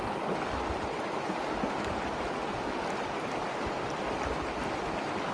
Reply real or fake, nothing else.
real